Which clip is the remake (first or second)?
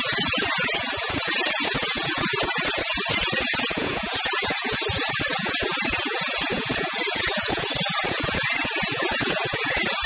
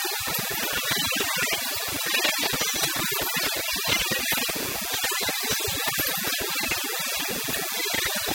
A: first